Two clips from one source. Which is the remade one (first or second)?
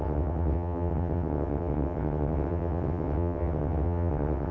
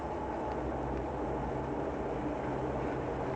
first